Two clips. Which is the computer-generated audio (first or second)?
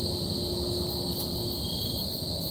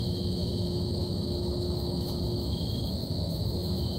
second